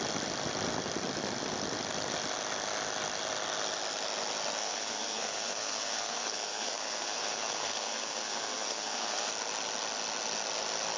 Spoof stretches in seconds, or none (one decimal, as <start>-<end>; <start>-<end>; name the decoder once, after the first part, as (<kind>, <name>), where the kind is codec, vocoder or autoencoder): 4.6-9.3 (codec, SNAC)